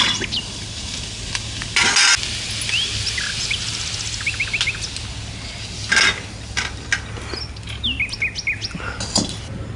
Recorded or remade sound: recorded